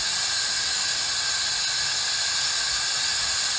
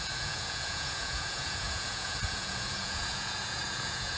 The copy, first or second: second